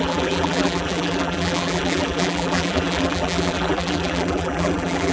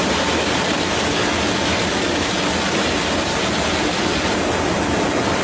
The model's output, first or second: first